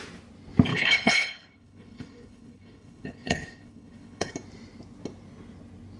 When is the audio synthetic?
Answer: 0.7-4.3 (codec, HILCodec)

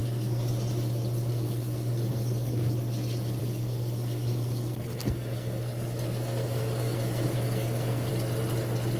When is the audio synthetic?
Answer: 0.0-0.5 (codec, SNAC); 1.3-2.7; 3.4-8.1

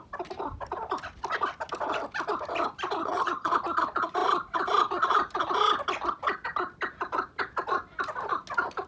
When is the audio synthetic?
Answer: 3.0-3.5 (vocoder, HiFi-GAN)

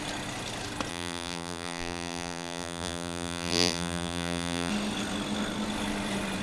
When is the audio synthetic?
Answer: 0.9-4.7 (vocoder, BigVGAN v2)

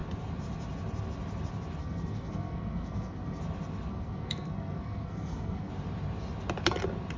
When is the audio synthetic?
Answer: 1.8-3.4 (codec, SNAC); 3.9-5.7